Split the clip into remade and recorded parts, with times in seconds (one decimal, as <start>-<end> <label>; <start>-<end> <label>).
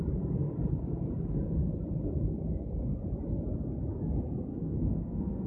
0.0-4.5 recorded; 4.5-5.5 remade